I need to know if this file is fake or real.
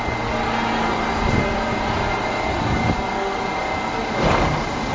real